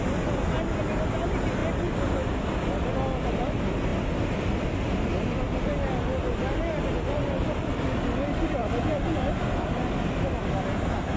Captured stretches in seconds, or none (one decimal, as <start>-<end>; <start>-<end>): 0.0-11.2